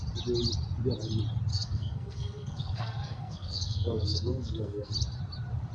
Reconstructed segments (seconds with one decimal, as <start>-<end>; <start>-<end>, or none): 1.5-4.9